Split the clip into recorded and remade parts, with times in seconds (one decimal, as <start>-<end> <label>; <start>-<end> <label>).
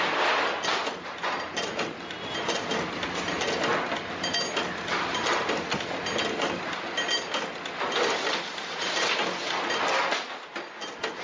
0.0-11.2 recorded